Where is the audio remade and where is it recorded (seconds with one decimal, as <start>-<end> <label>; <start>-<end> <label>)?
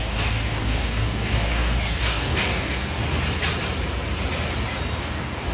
0.0-3.0 remade; 3.0-5.0 recorded; 5.0-5.5 remade